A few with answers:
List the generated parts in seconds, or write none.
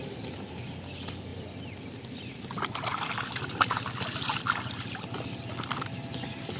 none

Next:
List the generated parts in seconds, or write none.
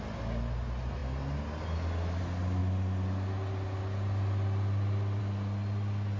none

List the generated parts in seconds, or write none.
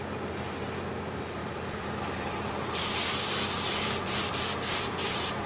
1.4-4.3 (vocoder, BigVGAN v2)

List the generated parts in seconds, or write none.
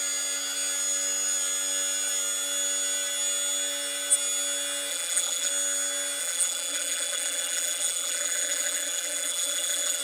4.9-5.5 (vocoder, BigVGAN v2); 6.2-10.0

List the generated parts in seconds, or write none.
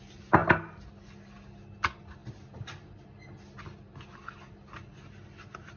2.2-3.3 (vocoder, BigVGAN v2)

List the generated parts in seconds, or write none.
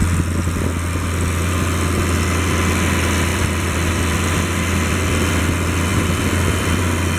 3.3-5.4 (vocoder, BigVGAN v2); 5.9-6.8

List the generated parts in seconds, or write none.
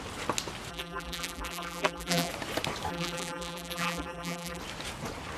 0.7-2.3 (vocoder, BigVGAN v2); 2.9-4.6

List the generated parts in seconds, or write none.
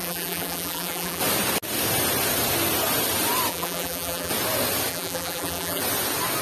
0.0-1.2 (vocoder, BigVGAN v2); 3.5-4.3; 4.9-5.8